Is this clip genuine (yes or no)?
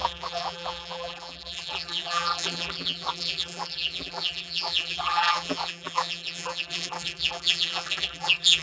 no